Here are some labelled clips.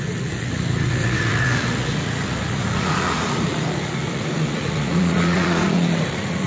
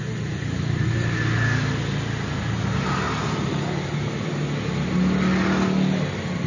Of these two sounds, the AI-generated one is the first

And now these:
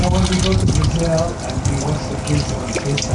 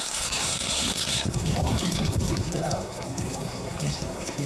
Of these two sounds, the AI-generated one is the second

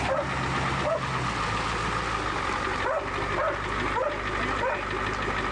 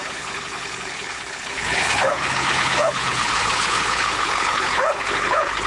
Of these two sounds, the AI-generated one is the second